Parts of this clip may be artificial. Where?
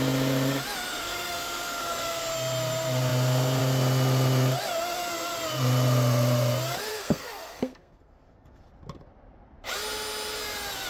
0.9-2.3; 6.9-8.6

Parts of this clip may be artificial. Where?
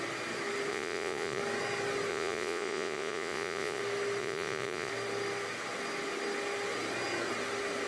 0.7-1.4; 2.1-3.8; 4.2-4.9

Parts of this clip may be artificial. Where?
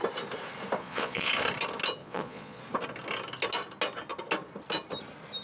0.8-1.3; 2.0-2.6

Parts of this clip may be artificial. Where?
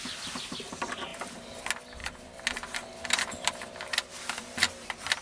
none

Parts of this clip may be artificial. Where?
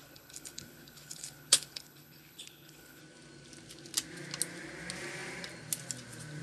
0.0-3.0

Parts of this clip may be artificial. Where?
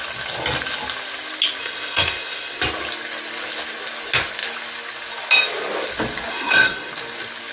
1.6-2.6; 6.3-6.9